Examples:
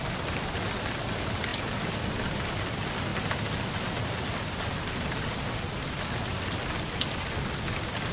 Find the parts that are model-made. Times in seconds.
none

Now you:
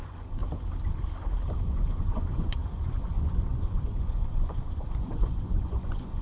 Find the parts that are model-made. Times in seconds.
0.0-0.4 (vocoder, Vocos); 1.7-6.2

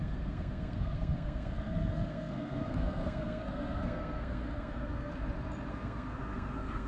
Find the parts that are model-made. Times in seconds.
0.0-5.1 (codec, SNAC); 5.7-6.9

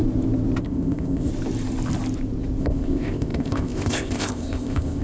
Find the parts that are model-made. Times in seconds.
0.6-1.3 (codec, ZipCodec); 2.6-5.0